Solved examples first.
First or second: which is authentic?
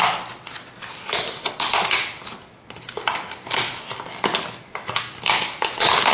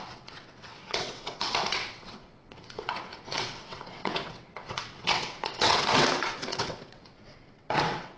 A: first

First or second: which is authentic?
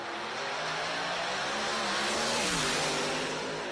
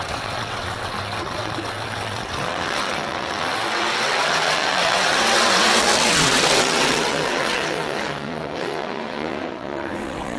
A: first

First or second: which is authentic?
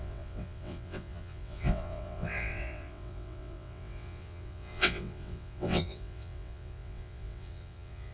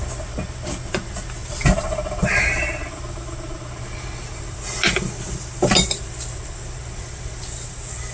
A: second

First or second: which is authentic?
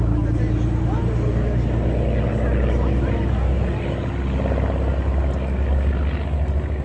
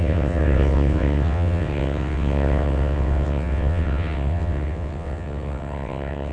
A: first